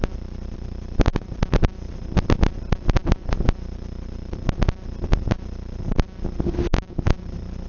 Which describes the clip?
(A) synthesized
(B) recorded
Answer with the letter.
B